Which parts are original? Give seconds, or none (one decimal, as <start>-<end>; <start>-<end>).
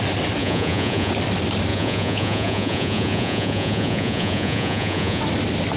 0.0-0.4; 1.1-1.7; 5.2-5.8